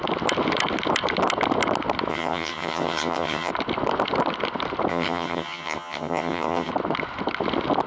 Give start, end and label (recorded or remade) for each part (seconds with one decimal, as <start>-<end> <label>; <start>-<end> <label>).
0.0-2.1 recorded; 2.1-3.5 remade; 3.5-4.9 recorded; 4.9-6.7 remade; 6.7-7.9 recorded